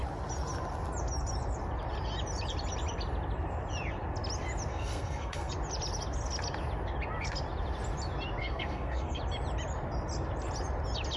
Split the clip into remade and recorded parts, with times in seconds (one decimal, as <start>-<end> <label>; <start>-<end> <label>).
0.0-4.7 recorded; 4.7-5.5 remade; 5.5-8.4 recorded; 8.4-9.2 remade; 9.2-11.2 recorded